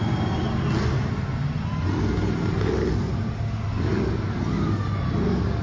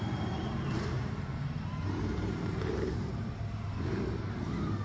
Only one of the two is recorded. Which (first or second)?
first